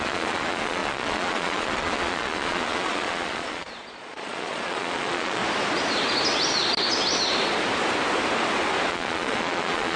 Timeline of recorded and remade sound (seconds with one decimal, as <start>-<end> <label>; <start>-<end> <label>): 0.0-5.4 remade; 5.4-8.9 recorded; 8.9-10.0 remade